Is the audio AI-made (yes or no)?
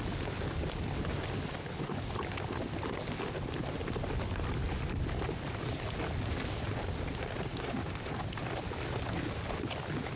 no